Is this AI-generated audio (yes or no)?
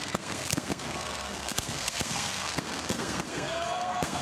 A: yes